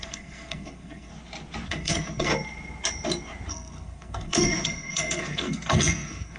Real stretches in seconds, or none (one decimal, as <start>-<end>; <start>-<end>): 1.1-1.7; 2.3-3.5